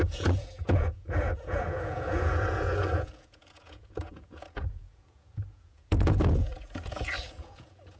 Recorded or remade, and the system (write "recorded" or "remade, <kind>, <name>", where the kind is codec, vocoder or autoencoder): remade, vocoder, Vocos